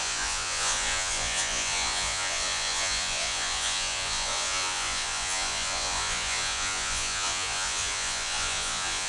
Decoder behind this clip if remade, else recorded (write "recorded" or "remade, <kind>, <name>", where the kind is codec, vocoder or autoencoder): remade, vocoder, Vocos